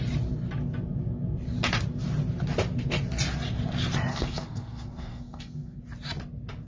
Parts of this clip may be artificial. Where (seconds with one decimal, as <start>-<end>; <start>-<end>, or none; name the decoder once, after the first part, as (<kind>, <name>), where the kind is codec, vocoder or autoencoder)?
4.1-5.8 (codec, SNAC)